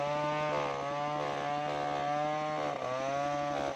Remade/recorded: recorded